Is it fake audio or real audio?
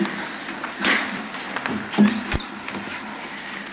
real